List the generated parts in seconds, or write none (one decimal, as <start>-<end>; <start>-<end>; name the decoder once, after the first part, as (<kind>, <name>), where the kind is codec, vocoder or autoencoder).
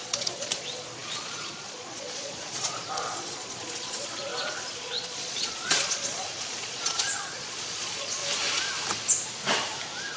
0.0-4.3 (vocoder, Vocos); 4.8-8.2